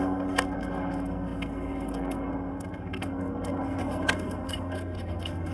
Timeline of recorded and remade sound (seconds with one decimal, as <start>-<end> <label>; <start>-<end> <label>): 0.0-5.5 remade